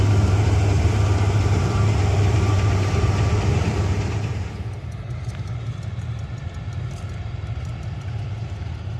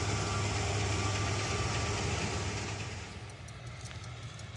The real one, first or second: second